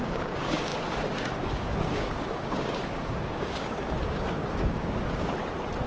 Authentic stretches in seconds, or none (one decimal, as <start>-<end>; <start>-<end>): 5.4-5.9